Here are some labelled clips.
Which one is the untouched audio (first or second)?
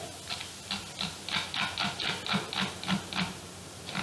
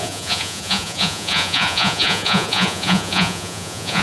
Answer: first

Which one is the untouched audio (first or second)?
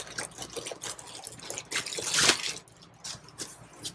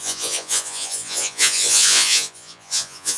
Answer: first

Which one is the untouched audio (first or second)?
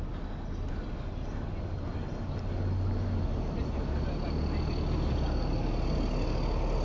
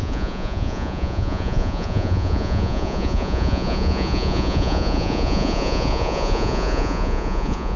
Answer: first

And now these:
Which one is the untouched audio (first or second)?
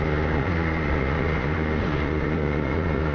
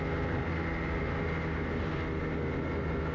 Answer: second